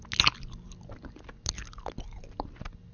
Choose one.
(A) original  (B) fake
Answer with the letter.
A